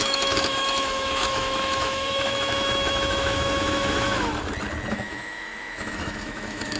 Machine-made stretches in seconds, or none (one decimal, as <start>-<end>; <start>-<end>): 0.0-4.3; 4.9-6.8